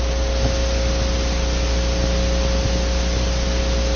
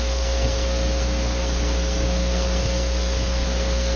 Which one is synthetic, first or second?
second